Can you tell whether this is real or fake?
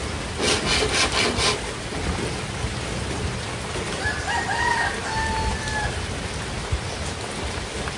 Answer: real